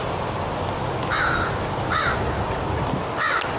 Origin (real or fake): real